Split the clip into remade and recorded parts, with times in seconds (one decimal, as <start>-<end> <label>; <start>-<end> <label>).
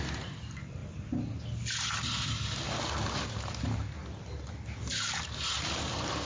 0.0-6.3 recorded